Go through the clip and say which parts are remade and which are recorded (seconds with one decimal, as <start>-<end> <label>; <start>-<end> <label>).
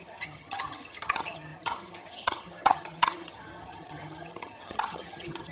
0.0-5.5 remade